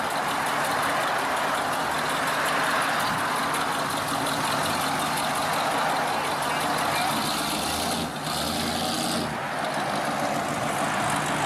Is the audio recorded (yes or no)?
yes